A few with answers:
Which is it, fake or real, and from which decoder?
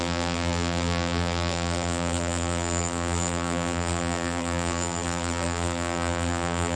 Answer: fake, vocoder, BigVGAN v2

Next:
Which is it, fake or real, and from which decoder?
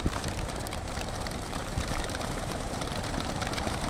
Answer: fake, vocoder, BigVGAN v2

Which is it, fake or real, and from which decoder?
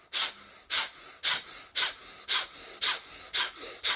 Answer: real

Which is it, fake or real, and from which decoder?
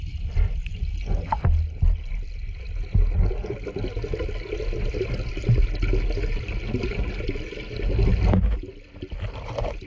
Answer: real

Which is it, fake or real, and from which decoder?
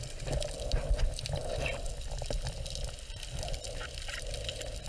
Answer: real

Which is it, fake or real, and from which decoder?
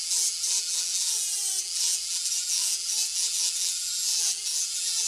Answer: fake, vocoder, BigVGAN v2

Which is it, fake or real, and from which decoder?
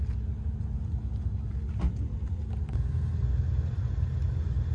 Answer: real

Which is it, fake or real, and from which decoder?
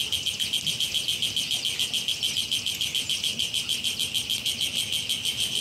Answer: real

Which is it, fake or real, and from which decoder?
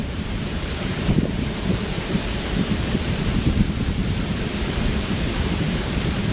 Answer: fake, vocoder, BigVGAN v2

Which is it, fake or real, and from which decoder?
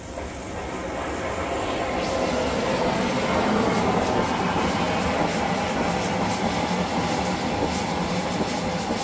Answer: real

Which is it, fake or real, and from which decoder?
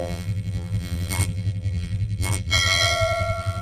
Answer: fake, vocoder, BigVGAN v2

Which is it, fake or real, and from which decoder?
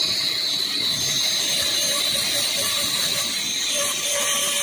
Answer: real